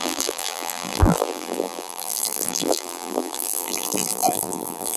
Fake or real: fake